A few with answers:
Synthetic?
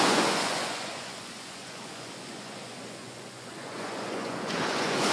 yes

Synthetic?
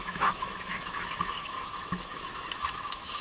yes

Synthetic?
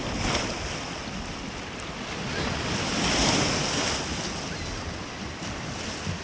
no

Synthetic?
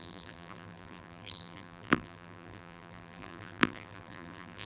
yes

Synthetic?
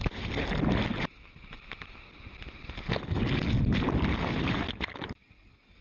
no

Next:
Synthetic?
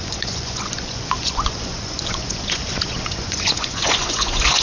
yes